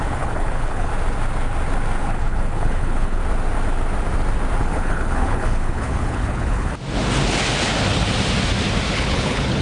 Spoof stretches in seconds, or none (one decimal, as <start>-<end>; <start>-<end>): 0.0-0.9; 2.0-3.2; 4.6-6.7; 8.9-9.6